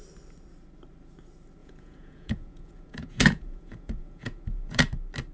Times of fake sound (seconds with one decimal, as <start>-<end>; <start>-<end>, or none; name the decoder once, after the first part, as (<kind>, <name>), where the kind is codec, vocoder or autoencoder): 1.6-4.8 (vocoder, Vocos)